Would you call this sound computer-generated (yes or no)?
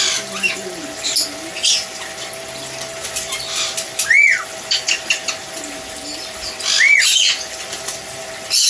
no